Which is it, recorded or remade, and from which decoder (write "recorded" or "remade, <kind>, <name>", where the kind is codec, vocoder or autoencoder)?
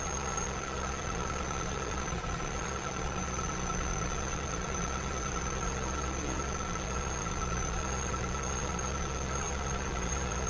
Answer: remade, vocoder, Vocos